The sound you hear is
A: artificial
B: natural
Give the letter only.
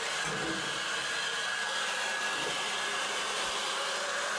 B